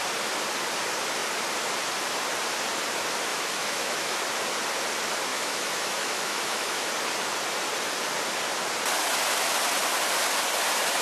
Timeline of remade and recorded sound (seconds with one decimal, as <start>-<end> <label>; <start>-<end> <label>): 0.0-3.3 recorded; 3.3-4.2 remade; 4.2-5.3 recorded; 5.3-6.9 remade; 6.9-11.0 recorded

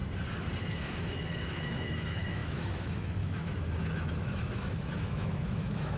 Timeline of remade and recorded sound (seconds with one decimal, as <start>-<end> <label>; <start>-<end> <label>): 0.0-0.6 recorded; 0.6-6.0 remade

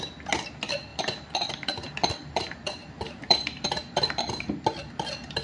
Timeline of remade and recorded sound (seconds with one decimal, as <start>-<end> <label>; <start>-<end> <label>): 0.0-0.9 recorded; 0.9-4.1 remade; 4.1-5.4 recorded

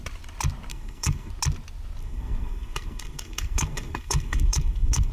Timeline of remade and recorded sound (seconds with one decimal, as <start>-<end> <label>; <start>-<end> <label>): 0.0-0.7 recorded; 0.7-1.3 remade; 1.3-2.0 recorded; 2.0-5.1 remade